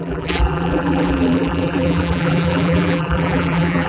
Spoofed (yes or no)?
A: yes